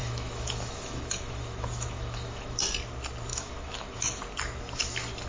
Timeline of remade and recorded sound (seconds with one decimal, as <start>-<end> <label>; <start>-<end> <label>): 0.0-2.6 remade; 2.6-3.3 recorded; 3.3-4.2 remade; 4.2-5.3 recorded